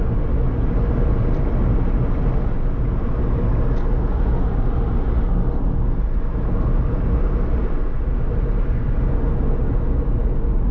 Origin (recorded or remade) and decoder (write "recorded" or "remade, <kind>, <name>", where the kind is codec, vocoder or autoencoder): recorded